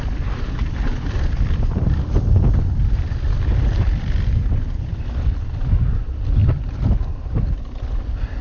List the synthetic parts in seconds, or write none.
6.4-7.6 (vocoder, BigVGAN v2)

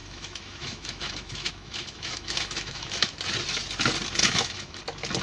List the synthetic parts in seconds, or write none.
0.0-3.1 (autoencoder, DAC-VAE); 4.2-4.8

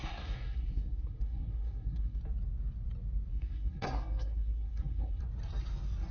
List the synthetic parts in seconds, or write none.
0.0-2.2 (codec, SNAC); 3.3-5.2